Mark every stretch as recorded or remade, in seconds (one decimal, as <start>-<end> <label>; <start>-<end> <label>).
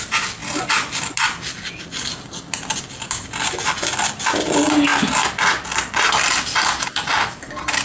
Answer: 0.0-7.8 recorded